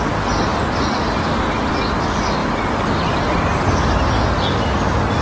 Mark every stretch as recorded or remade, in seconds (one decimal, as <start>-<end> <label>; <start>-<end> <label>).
0.0-5.2 recorded